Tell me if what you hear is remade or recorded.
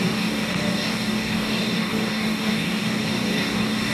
remade